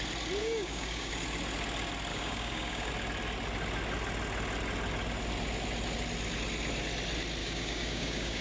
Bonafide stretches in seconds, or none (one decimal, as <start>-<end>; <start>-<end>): 0.0-0.4; 1.1-2.1; 2.9-7.4